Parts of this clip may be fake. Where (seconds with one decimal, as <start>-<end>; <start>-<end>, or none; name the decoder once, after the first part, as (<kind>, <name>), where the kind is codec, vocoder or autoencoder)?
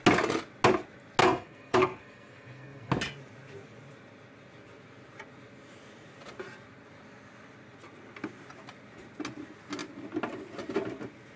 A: 1.2-2.9 (codec, SNAC)